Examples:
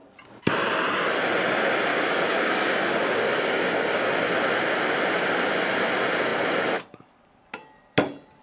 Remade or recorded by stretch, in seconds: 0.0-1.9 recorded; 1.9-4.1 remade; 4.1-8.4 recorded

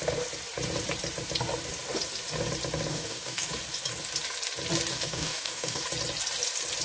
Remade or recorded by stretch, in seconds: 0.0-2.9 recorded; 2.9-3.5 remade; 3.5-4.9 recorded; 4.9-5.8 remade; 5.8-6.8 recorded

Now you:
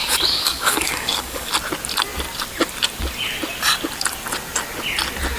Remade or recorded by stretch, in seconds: 0.0-1.5 remade; 1.5-5.4 recorded

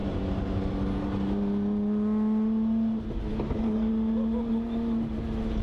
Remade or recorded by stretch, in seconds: 0.0-3.3 recorded; 3.3-3.9 remade; 3.9-5.6 recorded

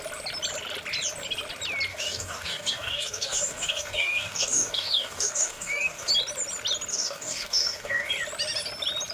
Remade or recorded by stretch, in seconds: 0.0-1.9 recorded; 1.9-6.1 remade; 6.1-6.9 recorded; 6.9-8.1 remade; 8.1-9.1 recorded

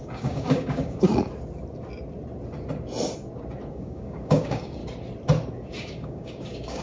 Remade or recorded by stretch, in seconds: 0.0-1.1 remade; 1.1-3.7 recorded; 3.7-4.8 remade; 4.8-5.8 recorded; 5.8-6.8 remade